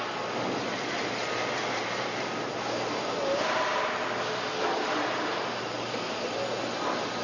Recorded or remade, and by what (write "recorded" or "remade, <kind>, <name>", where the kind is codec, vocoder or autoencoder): recorded